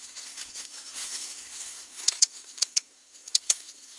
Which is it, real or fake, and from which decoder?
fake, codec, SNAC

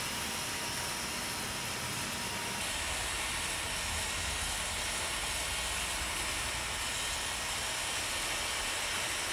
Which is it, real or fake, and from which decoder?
real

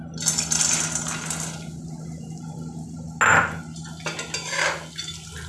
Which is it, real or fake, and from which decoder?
real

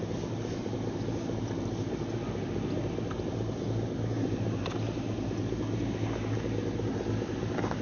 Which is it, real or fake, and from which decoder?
real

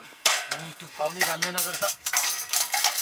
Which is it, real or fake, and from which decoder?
fake, codec, SNAC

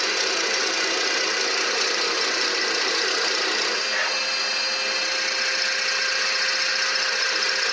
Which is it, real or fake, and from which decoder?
real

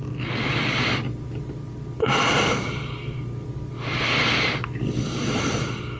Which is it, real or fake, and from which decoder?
real